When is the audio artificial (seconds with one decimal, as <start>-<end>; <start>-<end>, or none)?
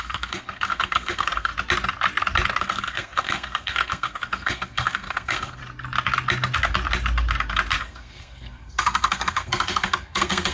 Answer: 0.0-1.5; 2.6-5.6; 7.8-10.5